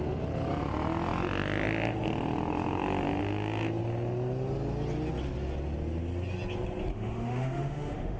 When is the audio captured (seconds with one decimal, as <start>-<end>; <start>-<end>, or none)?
0.0-6.9